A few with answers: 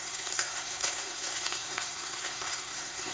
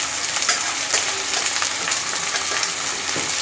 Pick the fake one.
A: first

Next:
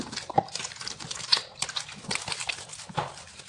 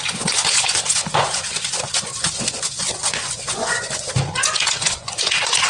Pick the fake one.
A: second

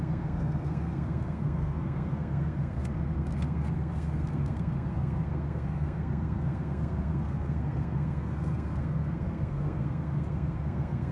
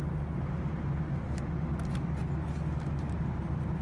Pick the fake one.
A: first